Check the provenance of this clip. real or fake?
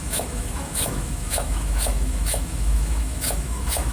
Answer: fake